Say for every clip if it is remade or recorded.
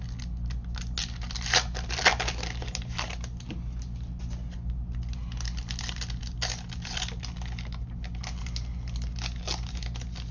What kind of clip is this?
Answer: recorded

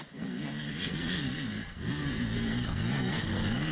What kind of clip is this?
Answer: remade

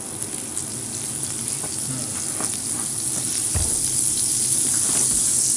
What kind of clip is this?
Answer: recorded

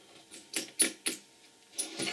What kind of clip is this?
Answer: recorded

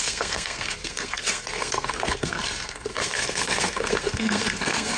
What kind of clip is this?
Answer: remade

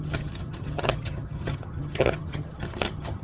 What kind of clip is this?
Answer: remade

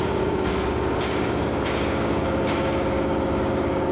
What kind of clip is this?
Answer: remade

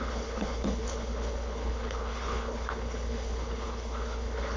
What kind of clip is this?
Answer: remade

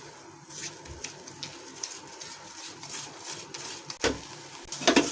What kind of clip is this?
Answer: recorded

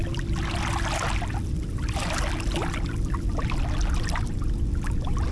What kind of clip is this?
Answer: recorded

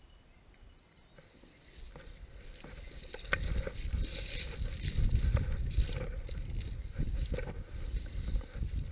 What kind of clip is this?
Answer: recorded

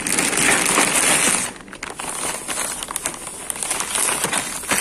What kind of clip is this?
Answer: recorded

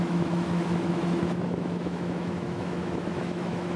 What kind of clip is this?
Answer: remade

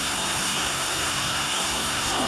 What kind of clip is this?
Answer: remade